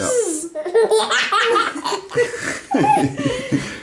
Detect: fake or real real